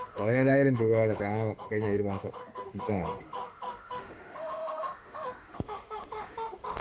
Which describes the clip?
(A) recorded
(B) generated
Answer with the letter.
B